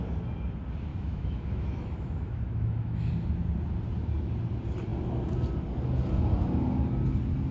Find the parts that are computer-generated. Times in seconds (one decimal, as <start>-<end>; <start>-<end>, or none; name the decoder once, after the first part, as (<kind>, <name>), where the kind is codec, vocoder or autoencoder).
0.9-3.1 (autoencoder, DAC-VAE)